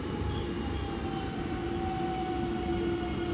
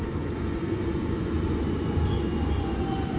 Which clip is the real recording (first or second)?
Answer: first